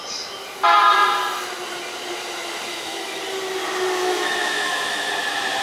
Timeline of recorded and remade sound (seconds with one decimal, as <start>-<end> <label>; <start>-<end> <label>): 0.0-2.7 recorded; 2.7-3.2 remade; 3.2-4.0 recorded; 4.0-5.1 remade; 5.1-5.6 recorded